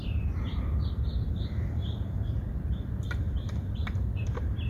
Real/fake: fake